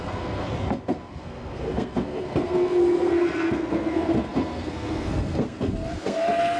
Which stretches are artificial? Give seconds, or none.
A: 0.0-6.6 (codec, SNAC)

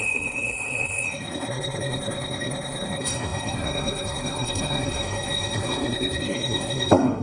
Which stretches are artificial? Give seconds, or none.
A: 0.0-7.2 (codec, SNAC)

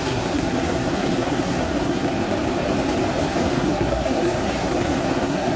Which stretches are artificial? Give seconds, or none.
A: 0.0-2.2 (codec, SNAC); 3.2-5.6